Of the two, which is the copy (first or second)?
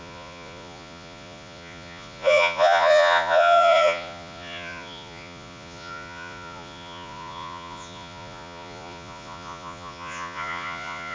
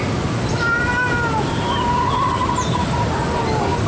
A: first